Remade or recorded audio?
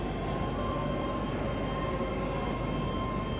recorded